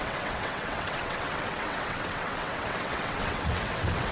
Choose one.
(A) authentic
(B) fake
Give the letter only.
B